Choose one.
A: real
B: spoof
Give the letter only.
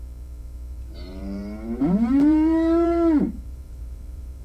B